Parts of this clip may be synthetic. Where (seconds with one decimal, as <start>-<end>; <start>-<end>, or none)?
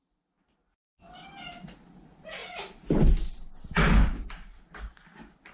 none